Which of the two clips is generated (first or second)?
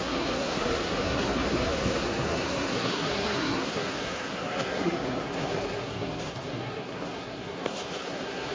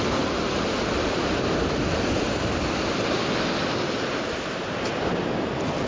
first